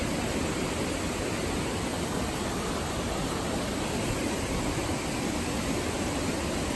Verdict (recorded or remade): recorded